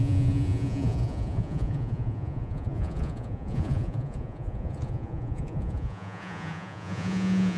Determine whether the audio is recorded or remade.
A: remade